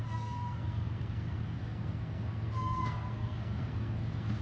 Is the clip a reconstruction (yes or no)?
yes